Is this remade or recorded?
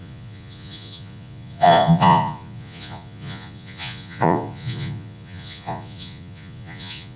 remade